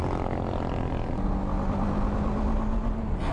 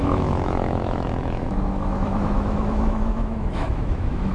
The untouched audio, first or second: first